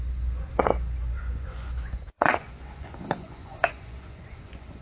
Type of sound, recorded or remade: remade